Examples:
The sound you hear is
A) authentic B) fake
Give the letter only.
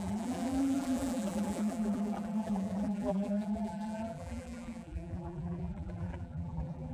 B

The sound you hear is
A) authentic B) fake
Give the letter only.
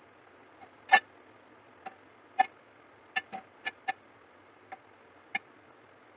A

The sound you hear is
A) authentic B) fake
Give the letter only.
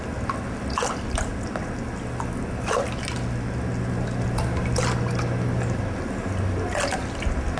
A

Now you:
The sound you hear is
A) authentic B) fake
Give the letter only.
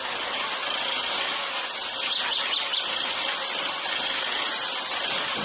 A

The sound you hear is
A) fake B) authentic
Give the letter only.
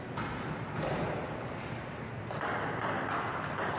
B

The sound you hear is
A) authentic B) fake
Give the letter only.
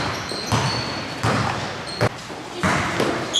A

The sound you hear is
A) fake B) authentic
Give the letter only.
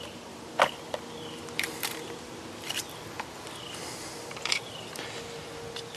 A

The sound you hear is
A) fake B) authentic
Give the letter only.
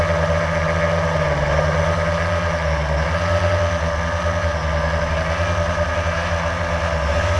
B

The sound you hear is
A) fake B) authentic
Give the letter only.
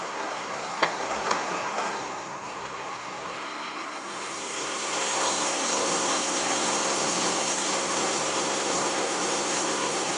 A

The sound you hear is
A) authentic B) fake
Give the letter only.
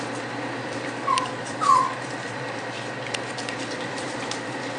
B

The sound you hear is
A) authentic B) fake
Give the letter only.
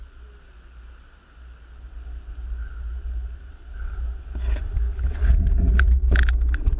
A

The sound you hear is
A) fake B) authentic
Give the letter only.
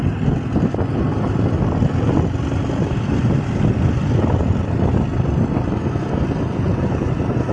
B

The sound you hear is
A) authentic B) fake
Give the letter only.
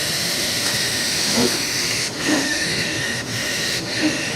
B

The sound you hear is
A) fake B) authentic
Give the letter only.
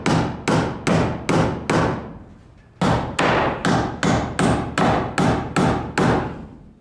B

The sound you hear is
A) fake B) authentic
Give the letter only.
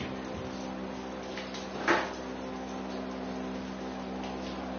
B